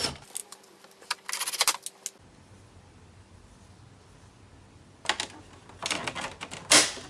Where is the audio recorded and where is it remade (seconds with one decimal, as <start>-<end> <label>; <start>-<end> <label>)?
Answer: 0.0-7.1 recorded

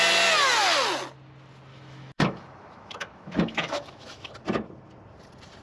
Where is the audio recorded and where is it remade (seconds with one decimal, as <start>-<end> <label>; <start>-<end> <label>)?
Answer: 0.0-1.7 recorded; 1.7-4.3 remade; 4.3-5.6 recorded

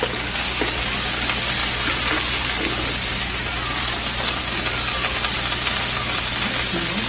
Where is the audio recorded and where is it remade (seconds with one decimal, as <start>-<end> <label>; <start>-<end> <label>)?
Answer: 0.0-7.1 recorded

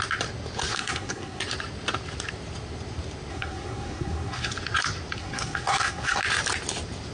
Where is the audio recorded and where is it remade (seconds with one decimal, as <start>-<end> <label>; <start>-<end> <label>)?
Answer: 0.0-0.7 recorded; 0.7-1.4 remade; 1.4-3.3 recorded; 3.3-4.5 remade; 4.5-5.2 recorded; 5.2-6.2 remade; 6.2-7.1 recorded

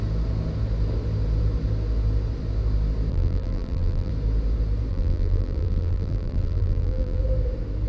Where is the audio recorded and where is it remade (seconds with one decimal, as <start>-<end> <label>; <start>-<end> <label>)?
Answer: 0.0-3.1 recorded; 3.1-4.1 remade; 4.1-4.9 recorded; 4.9-7.2 remade; 7.2-7.9 recorded

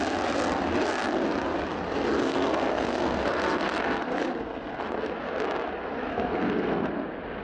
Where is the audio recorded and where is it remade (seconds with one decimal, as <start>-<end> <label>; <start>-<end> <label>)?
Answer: 0.0-2.2 recorded; 2.2-5.1 remade; 5.1-6.1 recorded; 6.1-6.9 remade; 6.9-7.4 recorded

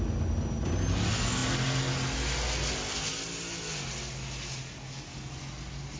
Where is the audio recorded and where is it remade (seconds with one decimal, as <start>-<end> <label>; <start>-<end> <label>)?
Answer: 0.0-6.0 recorded